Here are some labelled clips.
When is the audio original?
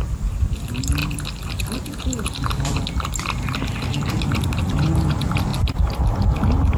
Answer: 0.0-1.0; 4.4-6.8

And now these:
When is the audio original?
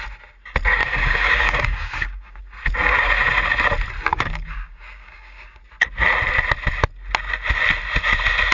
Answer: 0.0-0.8; 2.4-4.1; 5.6-8.5